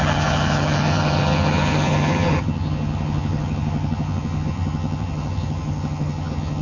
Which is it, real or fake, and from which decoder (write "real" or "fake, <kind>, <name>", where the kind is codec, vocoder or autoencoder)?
fake, vocoder, HiFi-GAN